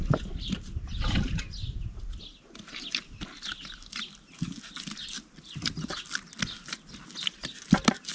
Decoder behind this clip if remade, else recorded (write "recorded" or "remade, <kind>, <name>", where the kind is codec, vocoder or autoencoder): recorded